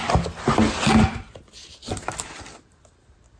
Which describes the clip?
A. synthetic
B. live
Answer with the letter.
B